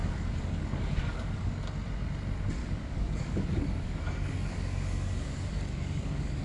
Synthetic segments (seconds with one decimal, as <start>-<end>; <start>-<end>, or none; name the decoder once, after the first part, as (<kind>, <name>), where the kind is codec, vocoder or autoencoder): 0.0-1.6 (codec, DAC); 2.6-6.4